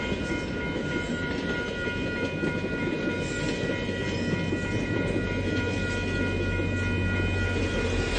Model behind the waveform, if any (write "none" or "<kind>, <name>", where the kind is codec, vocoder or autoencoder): none